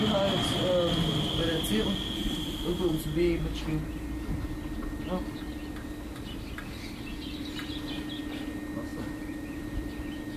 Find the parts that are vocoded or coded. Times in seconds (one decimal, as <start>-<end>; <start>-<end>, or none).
2.2-3.6; 8.9-10.0